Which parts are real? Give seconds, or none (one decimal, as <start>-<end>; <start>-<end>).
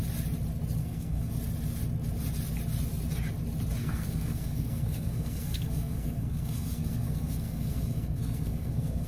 0.0-0.8; 1.3-3.8